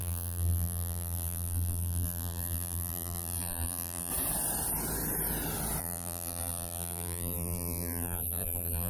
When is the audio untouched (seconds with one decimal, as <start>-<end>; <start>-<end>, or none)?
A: 4.1-5.8